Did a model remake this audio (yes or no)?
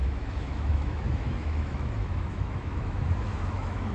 yes